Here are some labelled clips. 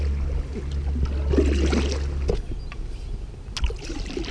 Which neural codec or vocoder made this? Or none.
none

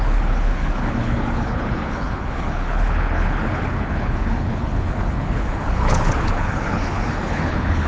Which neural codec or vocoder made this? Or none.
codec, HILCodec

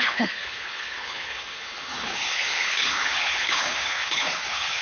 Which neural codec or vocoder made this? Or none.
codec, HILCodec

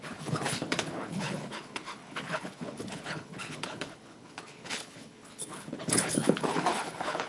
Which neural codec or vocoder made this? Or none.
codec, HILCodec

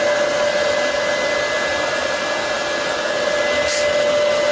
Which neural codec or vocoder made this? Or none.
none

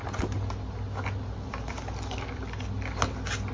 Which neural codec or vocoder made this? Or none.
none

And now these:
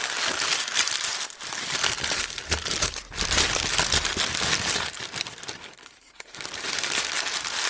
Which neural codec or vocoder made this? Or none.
none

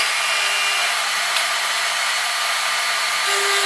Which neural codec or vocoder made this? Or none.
none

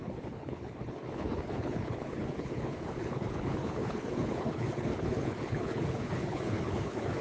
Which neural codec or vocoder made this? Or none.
codec, HILCodec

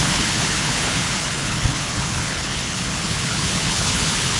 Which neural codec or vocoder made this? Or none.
codec, HILCodec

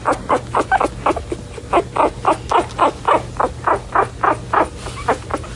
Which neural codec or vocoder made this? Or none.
none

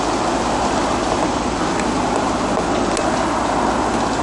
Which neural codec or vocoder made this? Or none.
none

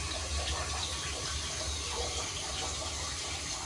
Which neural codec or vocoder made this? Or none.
none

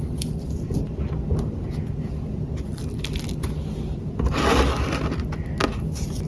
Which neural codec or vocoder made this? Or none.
none